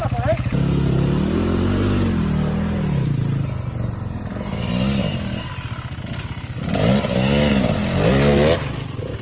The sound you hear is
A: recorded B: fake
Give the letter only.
A